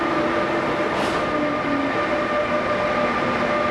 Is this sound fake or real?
real